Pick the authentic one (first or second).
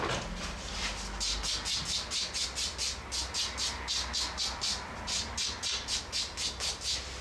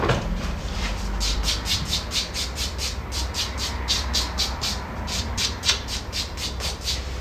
first